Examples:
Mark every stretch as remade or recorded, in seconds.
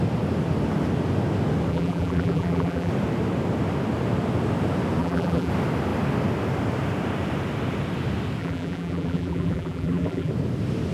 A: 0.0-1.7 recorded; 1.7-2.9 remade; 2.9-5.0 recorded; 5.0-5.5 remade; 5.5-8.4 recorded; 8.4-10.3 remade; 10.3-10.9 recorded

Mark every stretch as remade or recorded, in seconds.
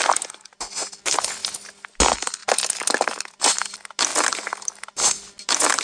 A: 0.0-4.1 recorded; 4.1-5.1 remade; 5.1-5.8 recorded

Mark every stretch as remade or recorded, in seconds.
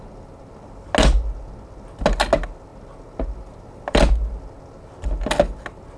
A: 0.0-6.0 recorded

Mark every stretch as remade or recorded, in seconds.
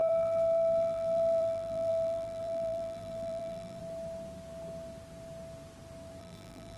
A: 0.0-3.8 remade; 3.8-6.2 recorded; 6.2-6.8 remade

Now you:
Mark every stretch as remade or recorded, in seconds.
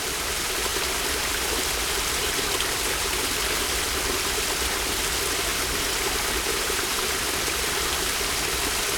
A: 0.0-5.5 recorded; 5.5-7.0 remade; 7.0-9.0 recorded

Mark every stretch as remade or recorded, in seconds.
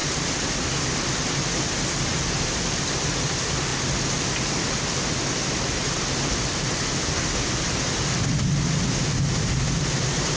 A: 0.0-2.1 recorded; 2.1-2.8 remade; 2.8-10.4 recorded